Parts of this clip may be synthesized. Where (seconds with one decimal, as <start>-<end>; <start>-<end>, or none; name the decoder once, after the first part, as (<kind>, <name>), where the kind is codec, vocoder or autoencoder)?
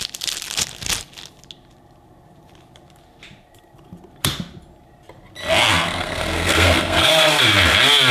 5.6-7.4 (codec, SNAC)